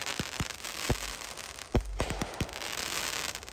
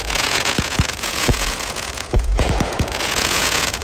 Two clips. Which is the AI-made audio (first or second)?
second